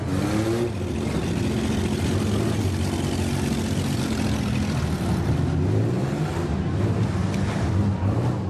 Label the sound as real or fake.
real